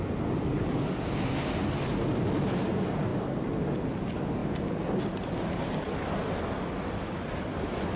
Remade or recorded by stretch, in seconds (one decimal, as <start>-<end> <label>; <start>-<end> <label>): 0.0-8.0 recorded